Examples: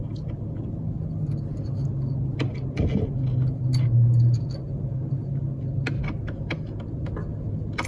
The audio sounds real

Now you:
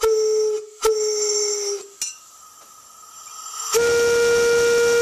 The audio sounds real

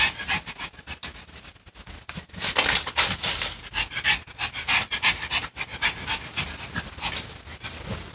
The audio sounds real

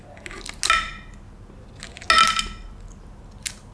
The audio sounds real